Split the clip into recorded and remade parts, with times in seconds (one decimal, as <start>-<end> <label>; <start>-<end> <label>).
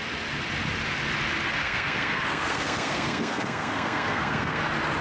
0.0-1.6 recorded; 1.6-4.6 remade; 4.6-5.0 recorded